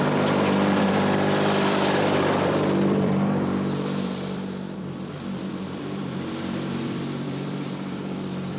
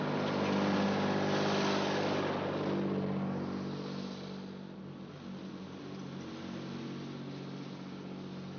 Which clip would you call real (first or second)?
second